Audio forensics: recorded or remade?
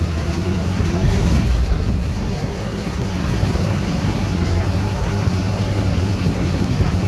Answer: remade